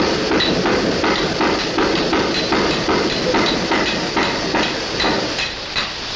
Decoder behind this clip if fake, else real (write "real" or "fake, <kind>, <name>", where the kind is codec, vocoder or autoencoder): real